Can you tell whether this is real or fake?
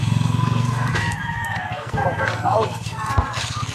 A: fake